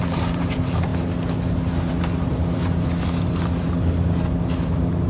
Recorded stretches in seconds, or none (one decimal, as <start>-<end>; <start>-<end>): 0.0-5.1